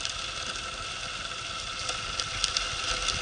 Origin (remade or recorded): recorded